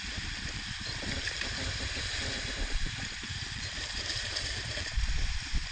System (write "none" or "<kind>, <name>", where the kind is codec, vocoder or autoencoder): vocoder, BigVGAN v2